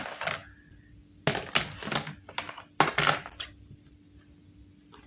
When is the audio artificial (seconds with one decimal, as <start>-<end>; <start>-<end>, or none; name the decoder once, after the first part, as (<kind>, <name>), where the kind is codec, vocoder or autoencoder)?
none